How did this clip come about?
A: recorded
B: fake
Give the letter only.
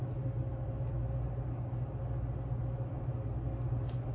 A